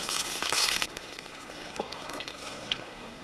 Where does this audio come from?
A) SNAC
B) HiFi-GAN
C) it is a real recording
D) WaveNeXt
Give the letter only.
A